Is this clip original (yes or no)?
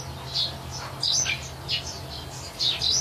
yes